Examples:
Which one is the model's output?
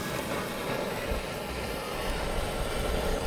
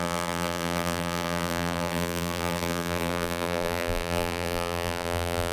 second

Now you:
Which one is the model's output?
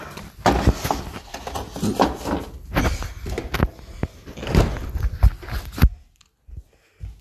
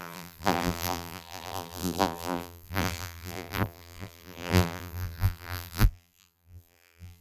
second